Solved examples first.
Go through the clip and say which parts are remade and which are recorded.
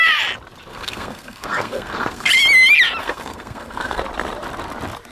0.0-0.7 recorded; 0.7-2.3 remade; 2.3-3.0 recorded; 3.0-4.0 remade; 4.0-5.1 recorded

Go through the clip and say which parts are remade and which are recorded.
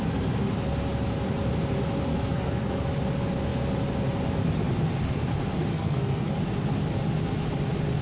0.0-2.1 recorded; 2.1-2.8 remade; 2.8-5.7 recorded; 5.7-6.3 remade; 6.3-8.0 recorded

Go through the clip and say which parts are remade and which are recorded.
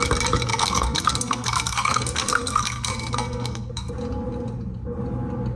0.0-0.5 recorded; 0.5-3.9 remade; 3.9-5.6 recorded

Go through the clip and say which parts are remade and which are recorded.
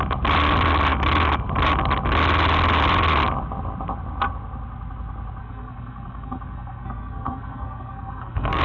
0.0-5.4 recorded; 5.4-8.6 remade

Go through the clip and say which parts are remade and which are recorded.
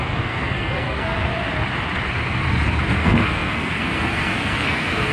0.0-1.3 remade; 1.3-2.9 recorded; 2.9-5.1 remade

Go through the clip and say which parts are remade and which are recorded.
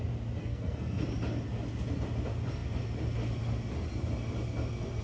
0.0-0.4 recorded; 0.4-1.0 remade; 1.0-5.0 recorded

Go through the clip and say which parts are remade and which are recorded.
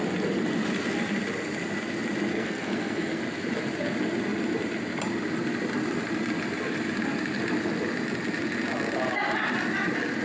0.0-2.3 recorded; 2.3-3.2 remade; 3.2-10.2 recorded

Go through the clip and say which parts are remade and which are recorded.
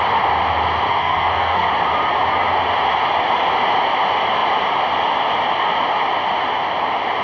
0.0-0.9 recorded; 0.9-1.7 remade; 1.7-7.2 recorded